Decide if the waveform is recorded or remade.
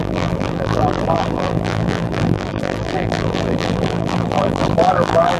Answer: remade